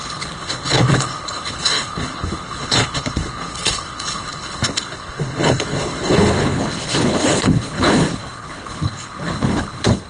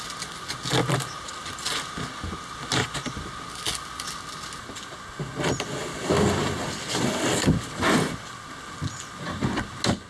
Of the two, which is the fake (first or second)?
first